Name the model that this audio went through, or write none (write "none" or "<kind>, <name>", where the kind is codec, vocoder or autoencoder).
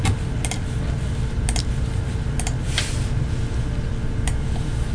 none